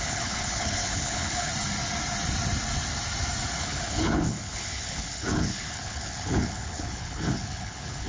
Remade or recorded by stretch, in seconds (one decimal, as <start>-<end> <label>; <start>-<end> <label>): 0.0-1.5 remade; 1.5-3.6 recorded; 3.6-8.1 remade